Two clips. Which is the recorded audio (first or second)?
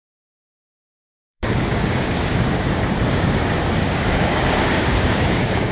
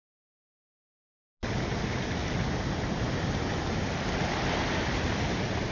second